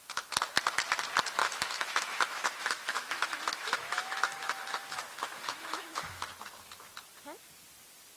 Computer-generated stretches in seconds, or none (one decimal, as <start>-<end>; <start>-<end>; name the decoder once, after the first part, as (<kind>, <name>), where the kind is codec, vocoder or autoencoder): 1.4-6.3 (autoencoder, DAC-VAE)